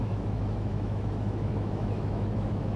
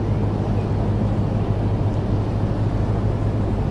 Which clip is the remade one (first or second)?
first